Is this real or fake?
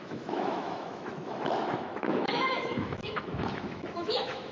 fake